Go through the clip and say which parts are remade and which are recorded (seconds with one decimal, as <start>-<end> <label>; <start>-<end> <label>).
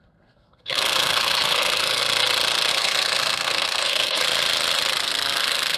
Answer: 0.0-2.0 remade; 2.0-2.7 recorded; 2.7-4.2 remade; 4.2-5.0 recorded; 5.0-5.8 remade